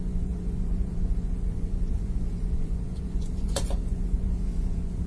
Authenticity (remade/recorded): remade